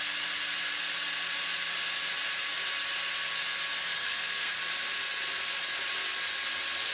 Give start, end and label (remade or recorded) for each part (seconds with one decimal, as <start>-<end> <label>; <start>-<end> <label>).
0.0-4.0 recorded; 4.0-4.5 remade; 4.5-6.9 recorded